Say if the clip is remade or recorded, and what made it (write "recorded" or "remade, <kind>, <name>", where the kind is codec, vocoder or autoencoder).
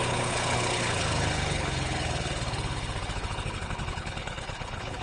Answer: remade, codec, HILCodec